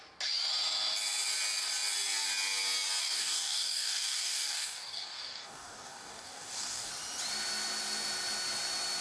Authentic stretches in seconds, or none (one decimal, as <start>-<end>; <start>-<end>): 0.0-3.0; 6.9-9.0